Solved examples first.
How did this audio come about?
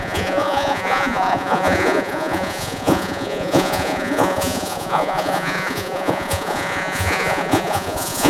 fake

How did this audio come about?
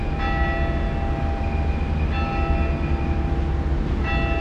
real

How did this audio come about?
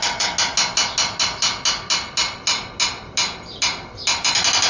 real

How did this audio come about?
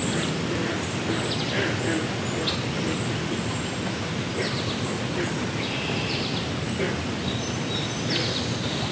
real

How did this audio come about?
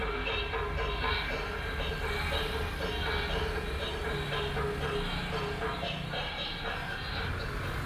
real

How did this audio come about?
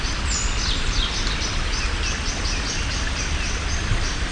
real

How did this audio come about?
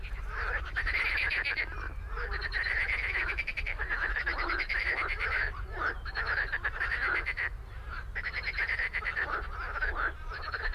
fake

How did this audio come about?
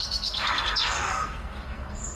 fake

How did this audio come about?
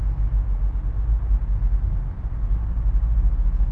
real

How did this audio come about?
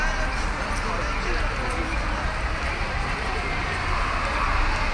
real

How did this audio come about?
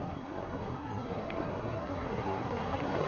fake